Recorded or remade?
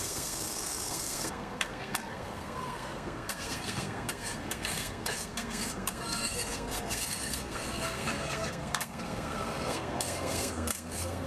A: remade